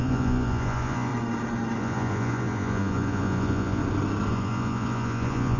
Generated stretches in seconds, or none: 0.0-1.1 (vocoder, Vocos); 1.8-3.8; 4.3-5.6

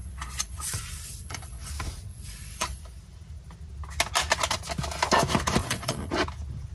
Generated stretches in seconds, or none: 0.0-1.7 (vocoder, Vocos); 2.1-2.8; 5.6-6.1

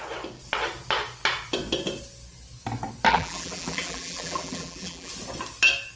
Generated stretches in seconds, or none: 3.1-5.1 (vocoder, BigVGAN v2)

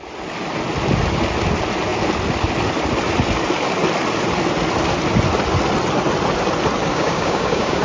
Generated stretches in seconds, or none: 6.9-7.8 (codec, DAC)

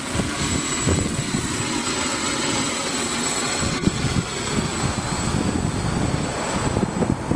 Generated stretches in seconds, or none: 0.9-4.0 (vocoder, WaveNeXt)

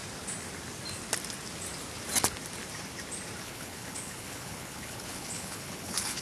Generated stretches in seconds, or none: 3.4-6.2 (codec, HILCodec)

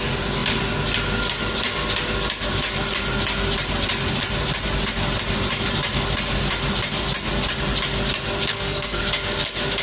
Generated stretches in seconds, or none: 8.5-9.0 (codec, SNAC)